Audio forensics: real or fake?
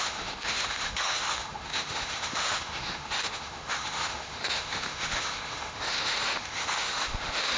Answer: fake